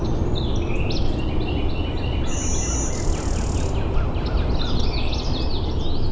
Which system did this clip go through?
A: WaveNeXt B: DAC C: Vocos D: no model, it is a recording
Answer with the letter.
D